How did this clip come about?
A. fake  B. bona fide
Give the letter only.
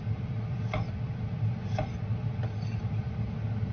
B